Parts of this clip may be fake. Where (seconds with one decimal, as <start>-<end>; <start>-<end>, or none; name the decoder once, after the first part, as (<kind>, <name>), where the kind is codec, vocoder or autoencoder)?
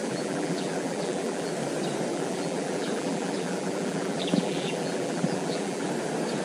0.0-1.5 (vocoder, BigVGAN v2); 2.1-5.9